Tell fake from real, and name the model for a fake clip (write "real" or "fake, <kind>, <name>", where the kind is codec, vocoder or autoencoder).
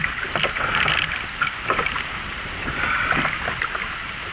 real